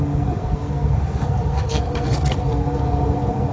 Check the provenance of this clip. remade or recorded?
remade